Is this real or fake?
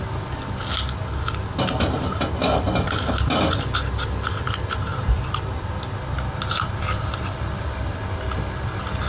real